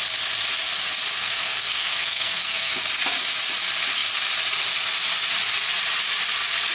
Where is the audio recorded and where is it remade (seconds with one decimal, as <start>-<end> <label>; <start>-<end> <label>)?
0.0-1.2 recorded; 1.2-2.8 remade; 2.8-6.7 recorded